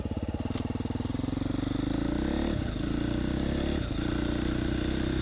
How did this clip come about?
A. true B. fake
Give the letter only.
A